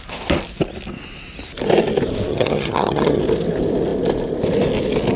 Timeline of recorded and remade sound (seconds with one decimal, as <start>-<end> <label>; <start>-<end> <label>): 0.0-2.3 recorded; 2.3-3.2 remade; 3.2-5.2 recorded